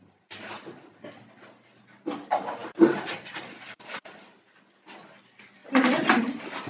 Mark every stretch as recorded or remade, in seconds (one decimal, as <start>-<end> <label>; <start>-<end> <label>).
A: 0.0-2.6 recorded; 2.6-3.8 remade; 3.8-5.6 recorded; 5.6-6.7 remade